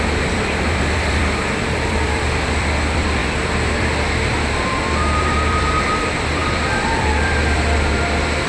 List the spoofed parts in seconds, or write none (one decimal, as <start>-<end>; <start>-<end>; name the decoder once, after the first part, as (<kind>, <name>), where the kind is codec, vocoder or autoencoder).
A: 0.0-8.5 (vocoder, BigVGAN v2)